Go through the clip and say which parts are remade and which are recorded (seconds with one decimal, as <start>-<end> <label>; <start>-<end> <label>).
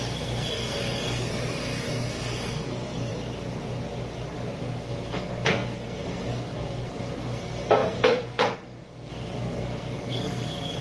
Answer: 0.0-3.1 remade; 3.1-4.6 recorded; 4.6-10.8 remade